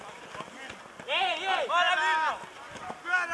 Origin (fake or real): real